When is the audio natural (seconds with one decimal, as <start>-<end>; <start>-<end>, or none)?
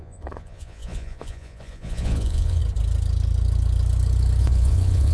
2.6-4.4